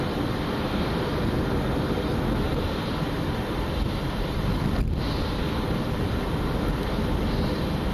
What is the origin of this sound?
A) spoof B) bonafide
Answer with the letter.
A